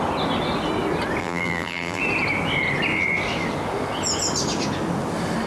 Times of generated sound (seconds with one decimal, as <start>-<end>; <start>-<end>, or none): 1.2-2.0